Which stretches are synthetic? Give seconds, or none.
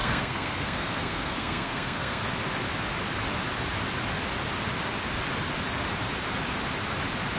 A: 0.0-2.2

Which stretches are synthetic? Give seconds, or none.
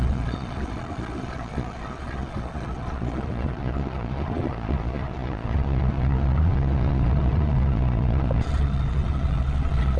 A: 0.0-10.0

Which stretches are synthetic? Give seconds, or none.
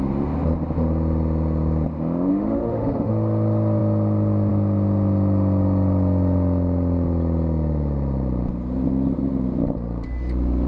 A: 2.3-3.1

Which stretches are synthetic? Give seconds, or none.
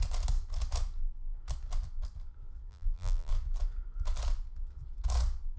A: 2.7-3.3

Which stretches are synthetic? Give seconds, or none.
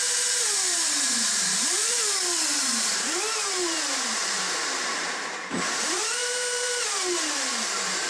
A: 0.0-8.1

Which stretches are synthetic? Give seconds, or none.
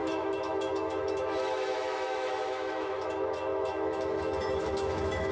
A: 0.0-5.3